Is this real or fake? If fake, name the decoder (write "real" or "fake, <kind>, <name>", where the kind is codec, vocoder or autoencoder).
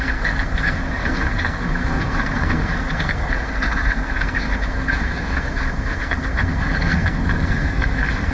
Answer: fake, codec, SNAC